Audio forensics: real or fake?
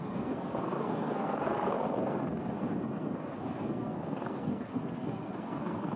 fake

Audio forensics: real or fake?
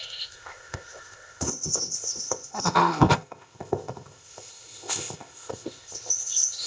fake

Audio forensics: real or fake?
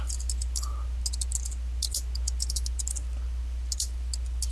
real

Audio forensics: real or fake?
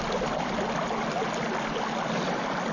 real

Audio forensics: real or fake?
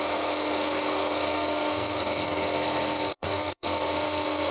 fake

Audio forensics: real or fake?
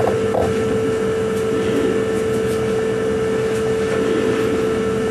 real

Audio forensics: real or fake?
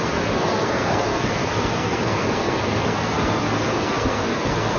fake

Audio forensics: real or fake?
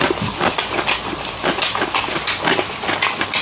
fake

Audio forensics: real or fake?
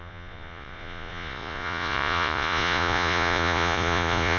fake